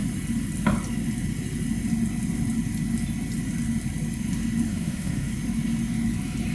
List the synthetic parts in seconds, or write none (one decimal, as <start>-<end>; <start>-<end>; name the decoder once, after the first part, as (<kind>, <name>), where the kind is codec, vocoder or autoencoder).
4.7-5.3 (autoencoder, DAC-VAE)